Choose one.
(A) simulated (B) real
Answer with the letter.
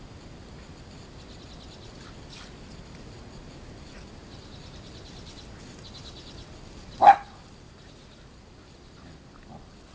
B